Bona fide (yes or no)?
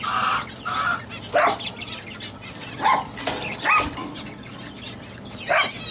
yes